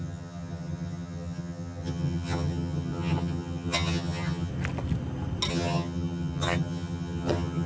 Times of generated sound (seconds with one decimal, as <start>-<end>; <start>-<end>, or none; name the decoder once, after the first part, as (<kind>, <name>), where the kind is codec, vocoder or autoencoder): 0.0-4.5 (vocoder, HiFi-GAN); 5.5-7.7